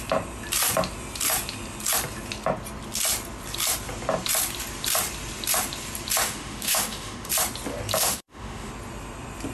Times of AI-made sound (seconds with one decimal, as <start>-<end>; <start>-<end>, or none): 6.2-7.3; 8.0-8.7